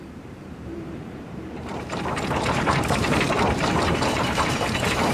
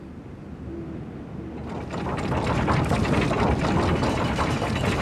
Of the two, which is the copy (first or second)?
first